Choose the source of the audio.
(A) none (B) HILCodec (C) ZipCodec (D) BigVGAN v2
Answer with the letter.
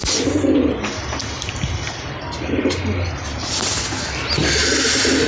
A